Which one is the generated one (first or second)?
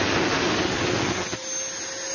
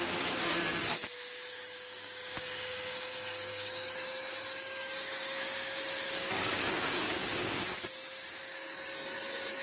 second